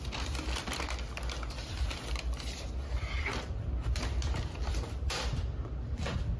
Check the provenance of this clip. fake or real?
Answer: real